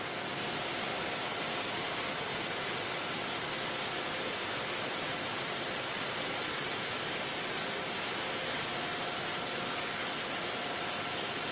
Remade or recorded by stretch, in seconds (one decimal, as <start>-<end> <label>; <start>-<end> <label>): 0.0-5.3 recorded; 5.3-6.9 remade; 6.9-11.5 recorded